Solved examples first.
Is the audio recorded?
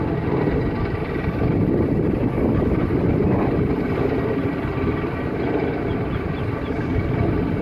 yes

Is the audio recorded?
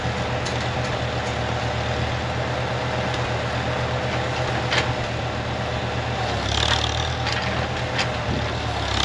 yes